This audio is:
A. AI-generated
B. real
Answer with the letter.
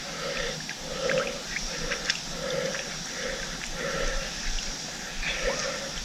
B